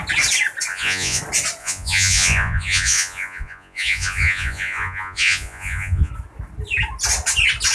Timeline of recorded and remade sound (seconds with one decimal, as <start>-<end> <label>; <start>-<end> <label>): 0.0-0.7 recorded; 0.7-1.2 remade; 1.2-1.6 recorded; 1.6-6.1 remade; 6.1-7.7 recorded